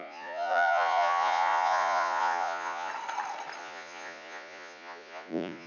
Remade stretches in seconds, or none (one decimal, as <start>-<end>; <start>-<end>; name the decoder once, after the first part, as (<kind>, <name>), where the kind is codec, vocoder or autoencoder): 0.0-2.9 (vocoder, Vocos); 3.6-5.7